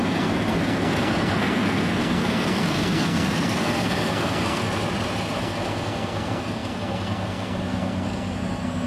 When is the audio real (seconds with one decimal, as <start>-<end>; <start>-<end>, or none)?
4.6-5.4